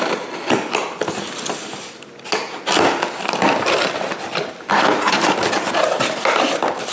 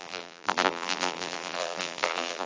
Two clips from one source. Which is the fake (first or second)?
second